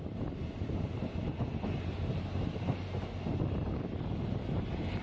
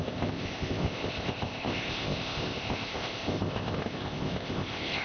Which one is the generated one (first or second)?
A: second